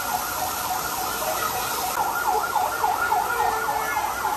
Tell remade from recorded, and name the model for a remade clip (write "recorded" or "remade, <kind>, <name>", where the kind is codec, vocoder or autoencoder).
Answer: recorded